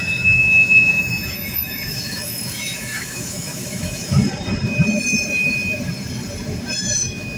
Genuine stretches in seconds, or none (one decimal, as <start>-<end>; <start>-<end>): 4.2-6.8